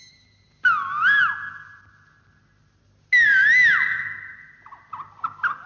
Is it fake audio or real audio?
real